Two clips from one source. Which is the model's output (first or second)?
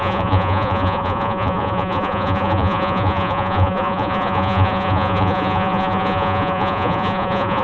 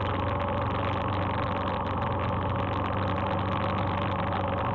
first